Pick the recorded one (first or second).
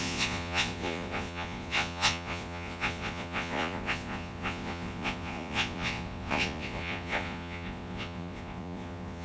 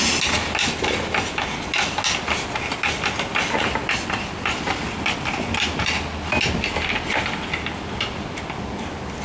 second